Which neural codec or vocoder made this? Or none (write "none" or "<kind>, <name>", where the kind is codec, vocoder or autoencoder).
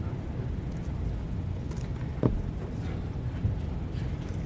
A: none